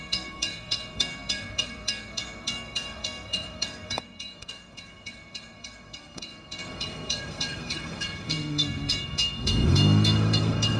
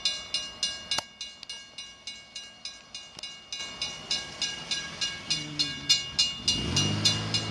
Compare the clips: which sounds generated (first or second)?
first